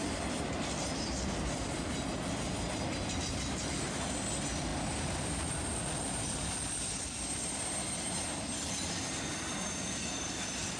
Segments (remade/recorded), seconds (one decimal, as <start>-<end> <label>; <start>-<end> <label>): 0.0-10.8 recorded